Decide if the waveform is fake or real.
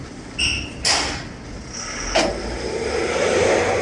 real